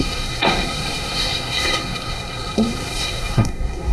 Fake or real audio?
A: fake